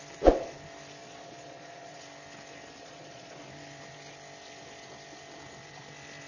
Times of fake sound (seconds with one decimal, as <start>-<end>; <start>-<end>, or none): 1.0-2.0; 2.8-3.4